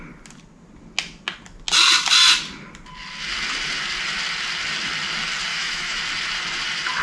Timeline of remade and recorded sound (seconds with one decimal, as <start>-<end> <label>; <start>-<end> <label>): 0.0-5.5 recorded; 5.5-6.0 remade; 6.0-7.0 recorded